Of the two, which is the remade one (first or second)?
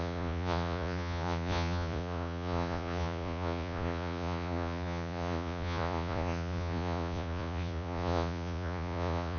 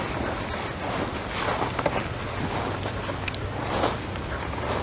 first